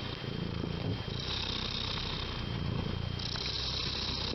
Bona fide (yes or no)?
yes